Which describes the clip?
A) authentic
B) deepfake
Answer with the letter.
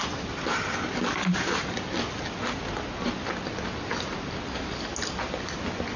A